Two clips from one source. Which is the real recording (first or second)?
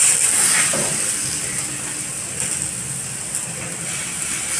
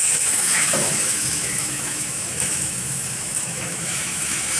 first